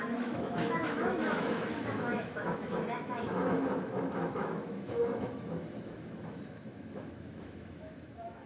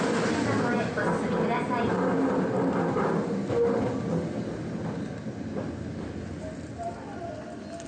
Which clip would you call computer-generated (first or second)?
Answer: first